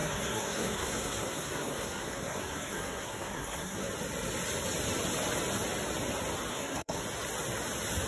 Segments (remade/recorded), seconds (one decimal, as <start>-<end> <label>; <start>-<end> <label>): 0.0-3.9 remade; 3.9-6.5 recorded; 6.5-7.0 remade; 7.0-8.1 recorded